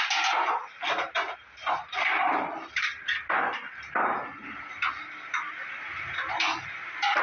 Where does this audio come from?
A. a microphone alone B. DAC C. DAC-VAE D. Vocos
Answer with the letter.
A